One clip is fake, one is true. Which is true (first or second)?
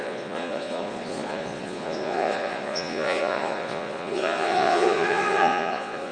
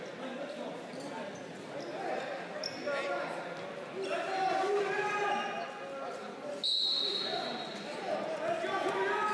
second